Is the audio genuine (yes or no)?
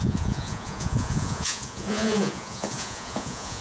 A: no